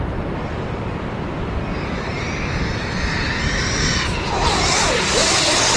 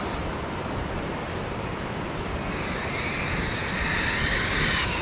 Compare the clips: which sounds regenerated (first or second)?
second